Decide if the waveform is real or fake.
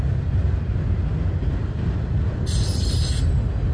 real